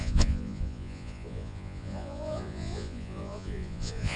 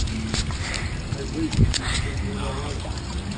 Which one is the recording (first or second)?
second